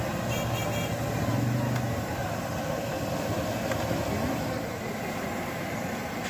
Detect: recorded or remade recorded